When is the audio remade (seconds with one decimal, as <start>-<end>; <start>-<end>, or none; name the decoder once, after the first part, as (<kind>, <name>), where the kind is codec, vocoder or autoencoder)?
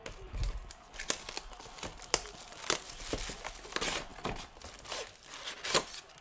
none